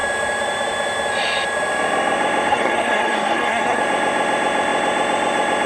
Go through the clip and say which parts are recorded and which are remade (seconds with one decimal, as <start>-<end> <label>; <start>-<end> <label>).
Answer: 0.0-2.5 recorded; 2.5-3.8 remade; 3.8-5.7 recorded